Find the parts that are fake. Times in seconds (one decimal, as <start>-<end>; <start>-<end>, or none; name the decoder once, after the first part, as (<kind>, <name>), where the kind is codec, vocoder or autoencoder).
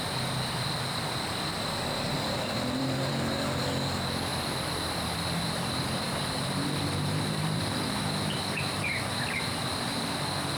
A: 2.1-3.6 (vocoder, BigVGAN v2); 4.3-9.0